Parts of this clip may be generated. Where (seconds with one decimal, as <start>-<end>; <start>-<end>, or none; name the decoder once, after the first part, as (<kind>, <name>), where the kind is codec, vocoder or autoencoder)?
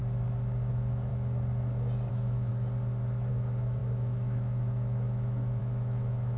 0.7-1.1 (autoencoder, DAC-VAE); 2.1-2.5; 3.3-6.4